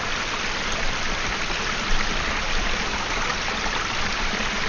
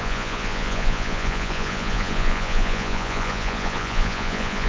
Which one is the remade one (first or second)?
second